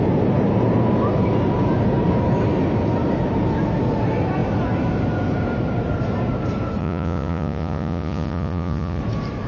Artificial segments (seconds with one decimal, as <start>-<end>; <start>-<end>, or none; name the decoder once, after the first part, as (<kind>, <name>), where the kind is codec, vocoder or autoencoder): 6.8-9.0 (vocoder, Vocos)